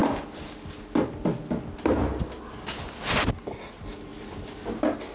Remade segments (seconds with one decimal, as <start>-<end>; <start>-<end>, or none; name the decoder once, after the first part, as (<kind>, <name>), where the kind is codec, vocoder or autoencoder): none